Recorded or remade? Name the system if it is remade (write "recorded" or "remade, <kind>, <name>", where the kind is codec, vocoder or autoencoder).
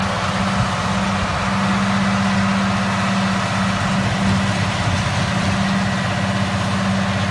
recorded